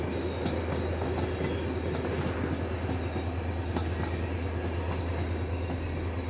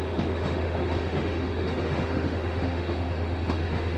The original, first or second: first